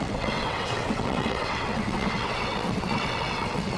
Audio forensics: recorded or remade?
remade